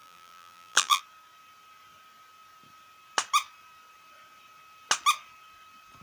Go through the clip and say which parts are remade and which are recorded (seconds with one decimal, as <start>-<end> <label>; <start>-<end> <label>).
0.0-1.0 remade; 1.0-6.0 recorded